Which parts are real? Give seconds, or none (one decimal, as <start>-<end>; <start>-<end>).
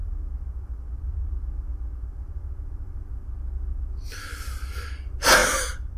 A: 0.0-5.4